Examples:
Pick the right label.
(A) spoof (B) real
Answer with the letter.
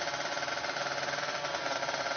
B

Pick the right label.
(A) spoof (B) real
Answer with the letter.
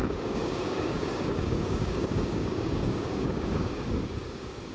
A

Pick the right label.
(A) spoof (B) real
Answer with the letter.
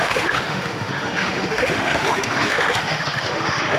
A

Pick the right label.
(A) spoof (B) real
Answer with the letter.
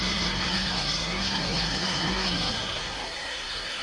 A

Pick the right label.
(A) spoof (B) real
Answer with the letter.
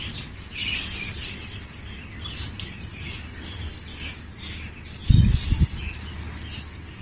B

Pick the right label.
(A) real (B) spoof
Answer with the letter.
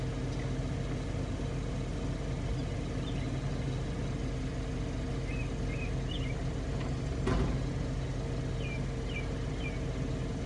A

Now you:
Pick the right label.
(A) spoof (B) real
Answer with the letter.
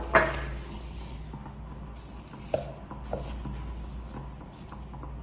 B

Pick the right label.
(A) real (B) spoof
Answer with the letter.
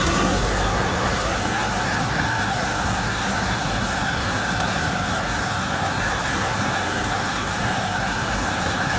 B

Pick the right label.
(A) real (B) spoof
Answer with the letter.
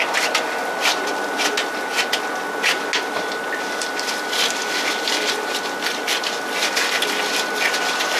A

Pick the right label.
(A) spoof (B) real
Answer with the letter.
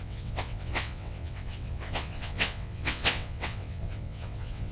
A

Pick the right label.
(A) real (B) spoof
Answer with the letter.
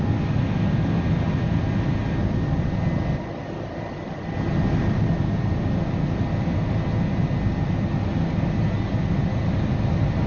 A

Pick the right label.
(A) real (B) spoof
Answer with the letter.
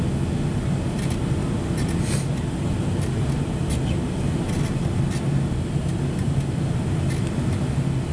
A